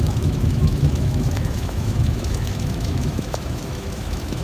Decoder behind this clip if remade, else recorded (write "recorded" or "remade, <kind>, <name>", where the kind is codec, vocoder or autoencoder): remade, autoencoder, DAC-VAE